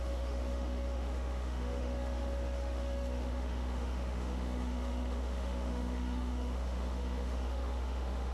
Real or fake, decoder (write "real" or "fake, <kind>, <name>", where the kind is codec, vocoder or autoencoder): fake, autoencoder, DAC-VAE